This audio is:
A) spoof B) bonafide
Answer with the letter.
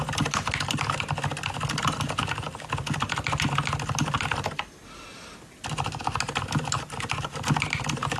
B